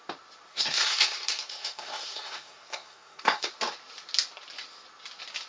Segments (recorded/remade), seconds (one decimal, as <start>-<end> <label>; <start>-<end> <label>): 0.0-0.5 recorded; 0.5-3.5 remade; 3.5-5.5 recorded